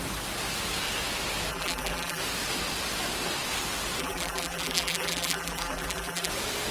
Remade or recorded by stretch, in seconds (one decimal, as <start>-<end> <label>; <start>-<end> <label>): 0.0-1.5 recorded; 1.5-2.2 remade; 2.2-4.0 recorded; 4.0-6.3 remade; 6.3-6.7 recorded